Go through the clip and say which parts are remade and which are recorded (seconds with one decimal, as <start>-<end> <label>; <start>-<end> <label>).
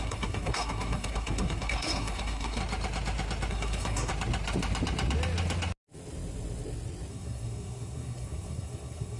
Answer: 0.0-2.6 remade; 2.6-3.5 recorded; 3.5-4.1 remade; 4.1-7.1 recorded; 7.1-9.2 remade